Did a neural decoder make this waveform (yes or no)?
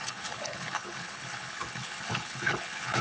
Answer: yes